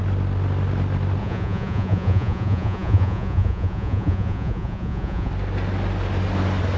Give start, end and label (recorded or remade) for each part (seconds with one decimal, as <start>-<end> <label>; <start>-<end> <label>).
0.0-1.2 recorded; 1.2-5.3 remade; 5.3-6.8 recorded